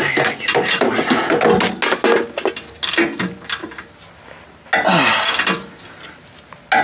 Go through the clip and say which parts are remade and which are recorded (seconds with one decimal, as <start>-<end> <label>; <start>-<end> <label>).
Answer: 0.0-6.8 recorded